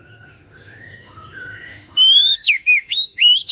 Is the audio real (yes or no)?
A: no